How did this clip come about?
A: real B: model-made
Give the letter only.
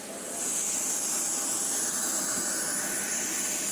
A